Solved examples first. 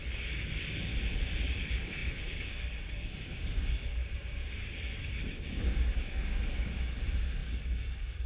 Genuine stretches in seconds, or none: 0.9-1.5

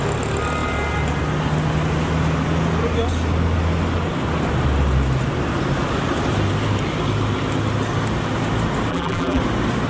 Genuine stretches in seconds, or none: 0.0-8.9; 9.4-9.9

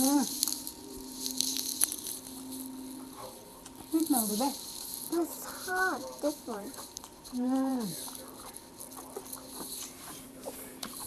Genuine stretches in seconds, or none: 1.7-4.3; 7.7-9.5

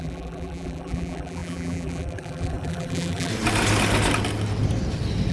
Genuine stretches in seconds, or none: 3.3-5.3